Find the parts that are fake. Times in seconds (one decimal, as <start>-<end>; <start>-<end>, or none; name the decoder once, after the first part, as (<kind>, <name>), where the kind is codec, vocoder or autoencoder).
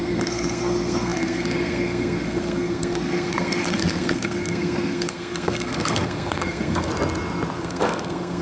0.0-6.9 (codec, SNAC); 7.6-8.4